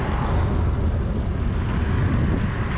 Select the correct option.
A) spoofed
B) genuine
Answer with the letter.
B